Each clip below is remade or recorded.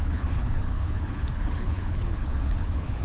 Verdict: remade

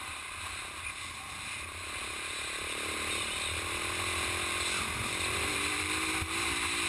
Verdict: recorded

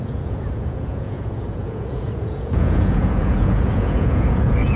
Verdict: remade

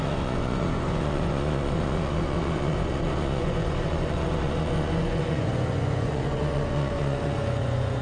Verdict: remade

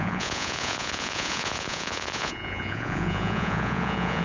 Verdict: remade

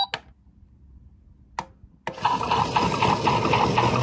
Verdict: recorded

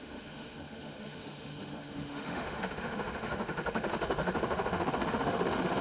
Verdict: remade